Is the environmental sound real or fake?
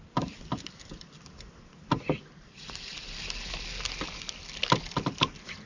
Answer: real